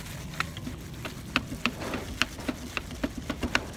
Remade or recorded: recorded